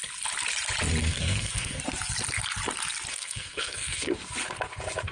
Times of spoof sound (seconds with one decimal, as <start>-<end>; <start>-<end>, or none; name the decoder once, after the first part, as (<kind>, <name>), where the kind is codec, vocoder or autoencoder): 1.0-1.8 (codec, SNAC); 3.1-4.1

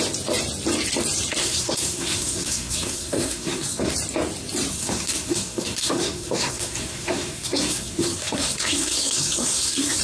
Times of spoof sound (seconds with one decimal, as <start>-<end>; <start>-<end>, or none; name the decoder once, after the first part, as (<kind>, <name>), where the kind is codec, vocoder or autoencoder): 1.4-3.9 (codec, SNAC); 4.7-10.0

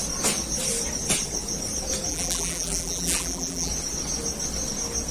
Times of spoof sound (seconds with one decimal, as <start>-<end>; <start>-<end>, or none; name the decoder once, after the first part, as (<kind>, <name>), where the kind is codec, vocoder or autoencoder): 2.1-3.7 (vocoder, BigVGAN v2)

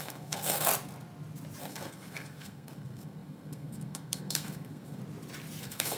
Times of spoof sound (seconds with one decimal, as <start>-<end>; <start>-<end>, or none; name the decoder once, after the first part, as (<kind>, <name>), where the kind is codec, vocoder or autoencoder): 0.0-0.7 (codec, SNAC); 1.6-5.0; 5.6-6.0